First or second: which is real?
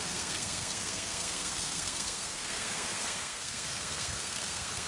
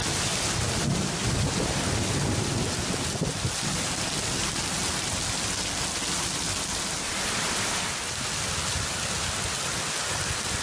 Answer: second